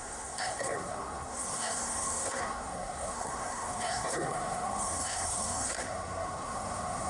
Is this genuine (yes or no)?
no